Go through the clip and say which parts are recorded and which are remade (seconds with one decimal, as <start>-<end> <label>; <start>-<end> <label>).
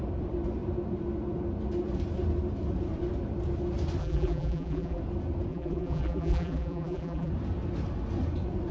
0.0-4.0 recorded; 4.0-5.0 remade; 5.0-5.5 recorded; 5.5-7.3 remade; 7.3-8.7 recorded